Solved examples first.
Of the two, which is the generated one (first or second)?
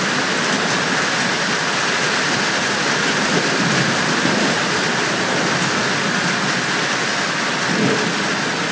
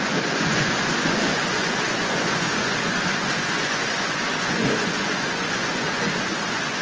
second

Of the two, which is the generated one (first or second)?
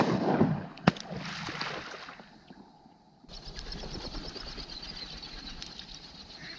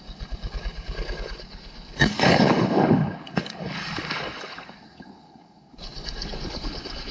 second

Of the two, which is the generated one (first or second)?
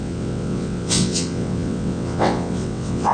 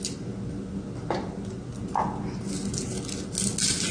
first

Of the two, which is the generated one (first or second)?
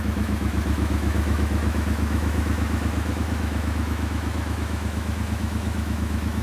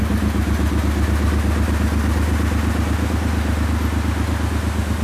first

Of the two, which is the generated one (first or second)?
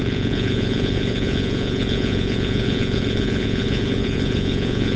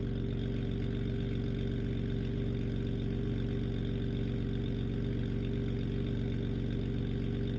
first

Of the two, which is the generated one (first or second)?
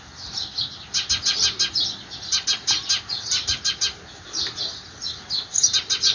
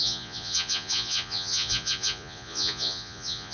second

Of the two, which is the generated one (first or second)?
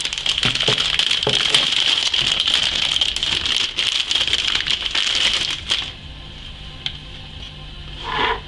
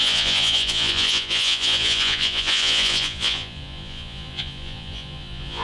second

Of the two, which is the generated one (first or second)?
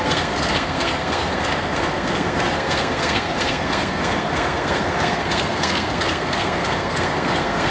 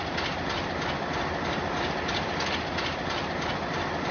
first